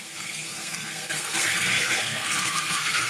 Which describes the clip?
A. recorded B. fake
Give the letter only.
B